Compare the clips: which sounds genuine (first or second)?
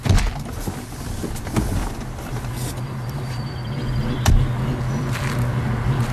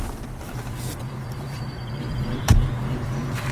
first